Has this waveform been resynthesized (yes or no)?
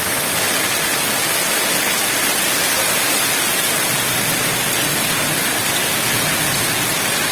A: no